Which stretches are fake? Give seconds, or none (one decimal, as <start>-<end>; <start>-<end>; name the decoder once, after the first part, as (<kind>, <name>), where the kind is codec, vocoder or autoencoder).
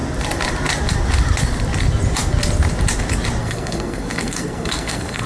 3.4-5.3 (codec, SNAC)